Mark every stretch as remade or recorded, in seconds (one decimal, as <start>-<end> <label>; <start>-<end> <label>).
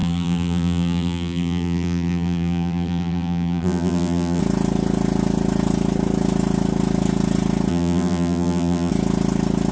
0.0-4.4 remade; 4.4-7.7 recorded; 7.7-8.9 remade; 8.9-9.7 recorded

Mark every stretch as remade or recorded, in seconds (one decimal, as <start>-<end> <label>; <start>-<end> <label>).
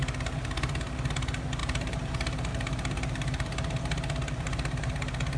0.0-1.6 recorded; 1.6-2.1 remade; 2.1-2.5 recorded; 2.5-3.8 remade; 3.8-5.4 recorded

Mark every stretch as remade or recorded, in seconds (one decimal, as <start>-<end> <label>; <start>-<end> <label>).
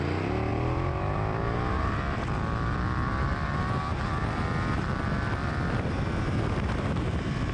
0.0-0.5 recorded; 0.5-4.9 remade; 4.9-5.4 recorded; 5.4-7.5 remade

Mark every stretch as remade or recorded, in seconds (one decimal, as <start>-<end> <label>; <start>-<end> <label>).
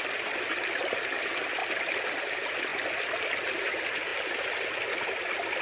0.0-5.6 recorded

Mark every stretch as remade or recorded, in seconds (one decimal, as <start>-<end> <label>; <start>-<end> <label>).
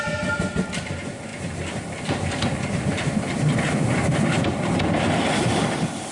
0.0-1.3 recorded; 1.3-5.0 remade; 5.0-6.1 recorded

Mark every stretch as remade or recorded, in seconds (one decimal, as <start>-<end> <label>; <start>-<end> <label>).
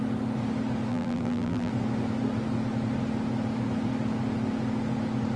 0.0-0.9 recorded; 0.9-1.7 remade; 1.7-5.4 recorded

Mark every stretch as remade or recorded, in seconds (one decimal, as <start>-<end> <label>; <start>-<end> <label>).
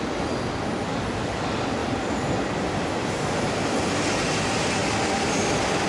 0.0-5.9 recorded